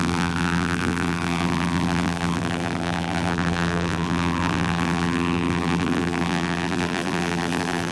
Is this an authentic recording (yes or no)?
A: no